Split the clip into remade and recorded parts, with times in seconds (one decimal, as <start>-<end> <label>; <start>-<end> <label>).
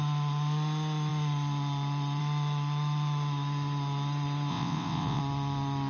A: 0.0-4.5 recorded; 4.5-5.2 remade; 5.2-5.9 recorded